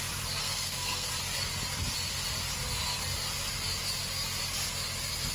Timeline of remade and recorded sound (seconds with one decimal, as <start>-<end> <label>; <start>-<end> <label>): 0.0-0.4 recorded; 0.4-1.1 remade; 1.1-5.3 recorded